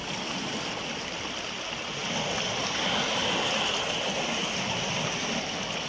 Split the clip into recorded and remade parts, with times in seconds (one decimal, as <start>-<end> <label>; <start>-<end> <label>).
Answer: 0.0-5.9 recorded